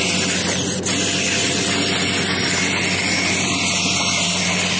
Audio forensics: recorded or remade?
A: recorded